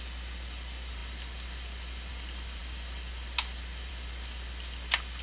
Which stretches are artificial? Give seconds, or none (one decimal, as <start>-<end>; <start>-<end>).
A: none